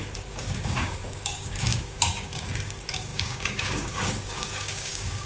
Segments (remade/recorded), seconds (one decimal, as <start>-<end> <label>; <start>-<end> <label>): 0.0-5.3 remade